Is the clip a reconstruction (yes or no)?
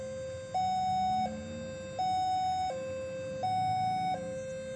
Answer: no